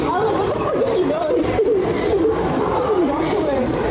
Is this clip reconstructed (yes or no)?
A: yes